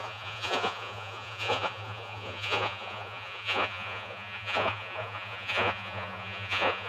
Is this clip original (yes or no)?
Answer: no